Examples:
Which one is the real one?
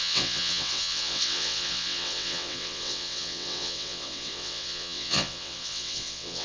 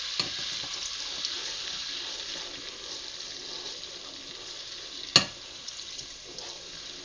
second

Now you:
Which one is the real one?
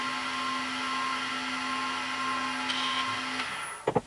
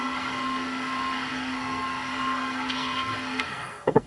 first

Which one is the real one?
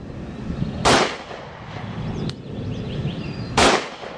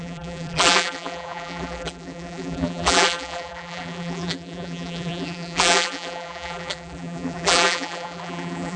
first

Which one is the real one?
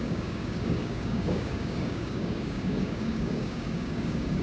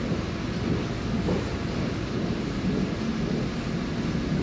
second